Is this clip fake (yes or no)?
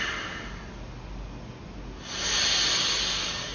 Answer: no